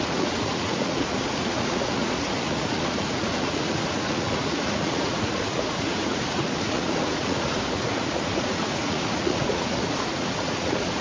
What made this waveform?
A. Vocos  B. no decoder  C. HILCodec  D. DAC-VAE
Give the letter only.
A